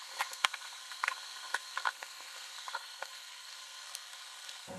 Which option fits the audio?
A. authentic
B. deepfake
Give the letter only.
B